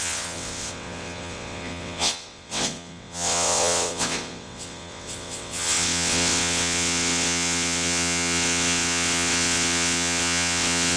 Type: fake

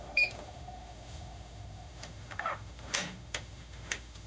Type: fake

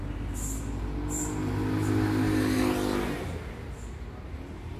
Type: real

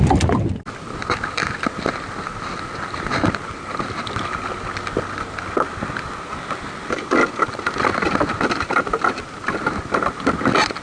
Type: real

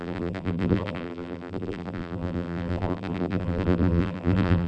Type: fake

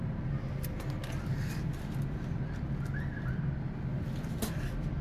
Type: real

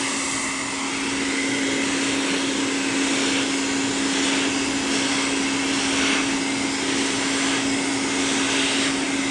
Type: real